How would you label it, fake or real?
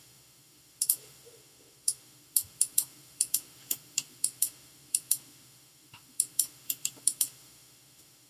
fake